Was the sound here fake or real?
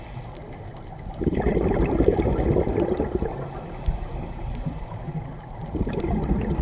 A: real